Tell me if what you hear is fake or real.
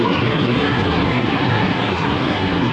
fake